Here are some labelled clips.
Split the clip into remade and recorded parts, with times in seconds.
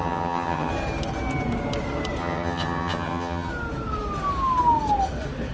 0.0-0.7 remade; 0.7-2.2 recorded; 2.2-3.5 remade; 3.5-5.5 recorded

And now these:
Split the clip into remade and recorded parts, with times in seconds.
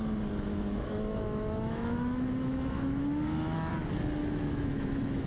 0.0-0.5 recorded; 0.5-3.7 remade; 3.7-4.2 recorded; 4.2-5.3 remade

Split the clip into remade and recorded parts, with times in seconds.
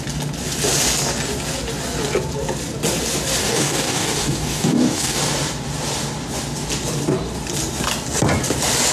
0.0-3.4 recorded; 3.4-5.2 remade; 5.2-8.9 recorded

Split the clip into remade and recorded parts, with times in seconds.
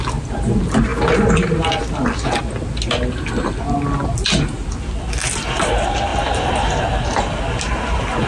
0.0-6.1 recorded; 6.1-7.4 remade; 7.4-8.3 recorded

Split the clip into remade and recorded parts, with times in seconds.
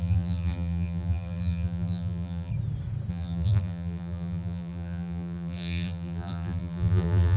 0.0-2.5 remade; 2.5-3.1 recorded; 3.1-7.4 remade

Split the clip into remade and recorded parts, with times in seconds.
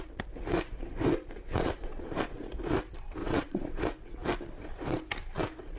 0.0-1.4 recorded; 1.4-2.5 remade; 2.5-3.2 recorded; 3.2-3.8 remade; 3.8-5.8 recorded